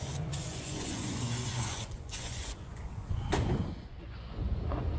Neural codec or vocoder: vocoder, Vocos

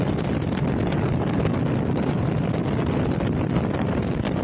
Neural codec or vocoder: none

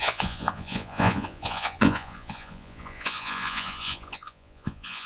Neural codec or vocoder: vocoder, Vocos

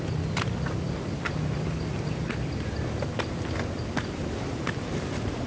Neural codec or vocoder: none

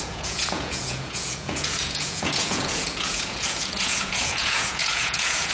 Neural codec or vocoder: vocoder, Vocos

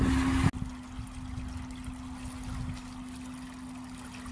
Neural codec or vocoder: none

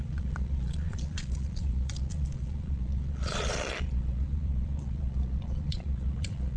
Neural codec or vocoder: vocoder, Vocos